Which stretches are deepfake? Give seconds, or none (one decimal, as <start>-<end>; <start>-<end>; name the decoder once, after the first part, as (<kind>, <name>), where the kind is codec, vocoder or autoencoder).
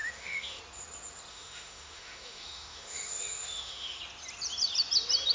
0.0-0.6 (autoencoder, DAC-VAE); 1.3-4.0